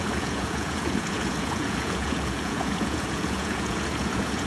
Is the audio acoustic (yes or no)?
no